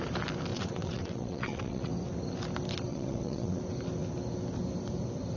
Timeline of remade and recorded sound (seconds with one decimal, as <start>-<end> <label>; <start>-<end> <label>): 0.0-0.5 recorded; 0.5-1.9 remade; 1.9-2.9 recorded; 2.9-3.6 remade; 3.6-5.4 recorded